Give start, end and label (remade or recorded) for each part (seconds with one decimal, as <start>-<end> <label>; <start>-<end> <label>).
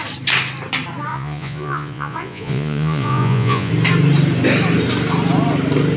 0.0-1.1 recorded; 1.1-3.7 remade; 3.7-6.0 recorded